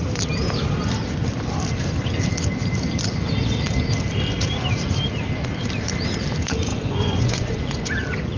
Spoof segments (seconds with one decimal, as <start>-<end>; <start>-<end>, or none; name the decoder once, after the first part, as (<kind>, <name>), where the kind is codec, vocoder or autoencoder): 6.7-7.9 (vocoder, Vocos)